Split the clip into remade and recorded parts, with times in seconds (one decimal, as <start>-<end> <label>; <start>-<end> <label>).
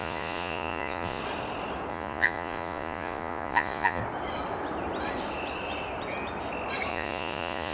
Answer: 0.0-1.2 remade; 1.2-1.9 recorded; 1.9-4.0 remade; 4.0-6.9 recorded; 6.9-7.7 remade